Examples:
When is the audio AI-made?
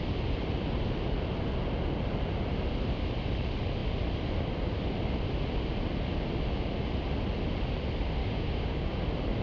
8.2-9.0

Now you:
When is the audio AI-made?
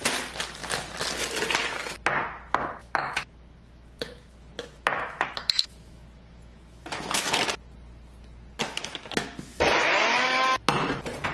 2.8-7.3; 8.6-10.7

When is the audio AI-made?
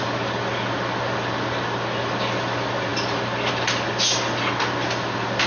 none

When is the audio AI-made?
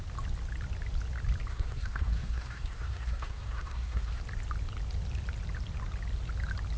1.5-4.2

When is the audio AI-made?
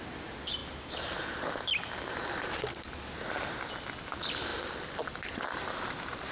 none